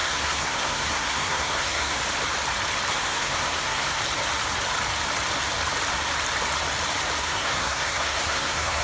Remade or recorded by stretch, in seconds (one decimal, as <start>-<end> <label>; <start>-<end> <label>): 0.0-2.0 remade; 2.0-2.9 recorded; 2.9-4.0 remade; 4.0-7.2 recorded; 7.2-8.8 remade

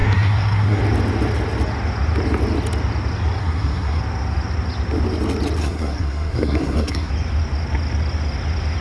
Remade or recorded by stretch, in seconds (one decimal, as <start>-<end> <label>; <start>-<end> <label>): 0.0-0.8 remade; 0.8-3.4 recorded; 3.4-4.0 remade; 4.0-5.6 recorded; 5.6-7.1 remade; 7.1-8.8 recorded

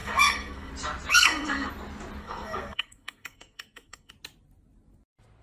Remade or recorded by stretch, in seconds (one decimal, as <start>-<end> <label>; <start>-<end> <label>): 0.0-0.7 remade; 0.7-1.1 recorded; 1.1-1.7 remade; 1.7-2.2 recorded; 2.2-4.1 remade; 4.1-5.4 recorded

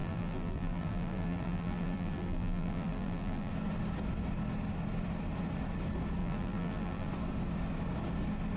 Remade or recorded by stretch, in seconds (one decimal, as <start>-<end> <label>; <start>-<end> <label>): 0.0-3.5 remade; 3.5-6.2 recorded; 6.2-7.1 remade; 7.1-8.6 recorded

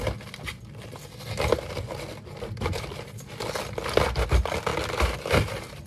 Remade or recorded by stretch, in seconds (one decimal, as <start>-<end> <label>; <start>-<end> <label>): 0.0-5.9 recorded

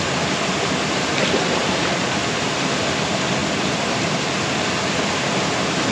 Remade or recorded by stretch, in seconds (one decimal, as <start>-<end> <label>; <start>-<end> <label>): 0.0-1.6 recorded; 1.6-3.0 remade; 3.0-5.9 recorded

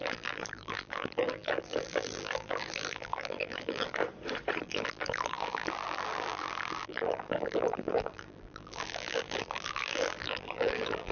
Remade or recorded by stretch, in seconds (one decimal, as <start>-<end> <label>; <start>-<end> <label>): 0.0-4.0 remade; 4.0-4.6 recorded; 4.6-11.1 remade

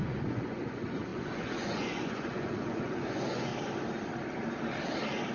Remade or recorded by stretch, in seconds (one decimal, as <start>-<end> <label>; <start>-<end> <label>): 0.0-3.5 remade; 3.5-5.3 recorded